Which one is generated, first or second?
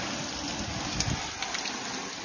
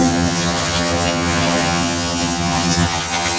second